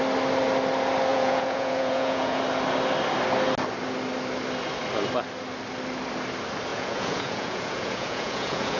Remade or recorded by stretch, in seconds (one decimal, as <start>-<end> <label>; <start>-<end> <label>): 0.0-1.1 recorded; 1.1-2.4 remade; 2.4-6.7 recorded; 6.7-8.8 remade